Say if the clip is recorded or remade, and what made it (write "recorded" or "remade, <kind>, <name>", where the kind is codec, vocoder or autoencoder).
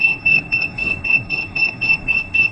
remade, codec, SNAC